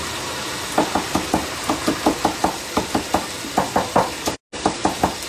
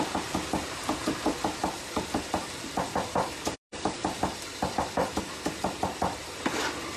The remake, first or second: second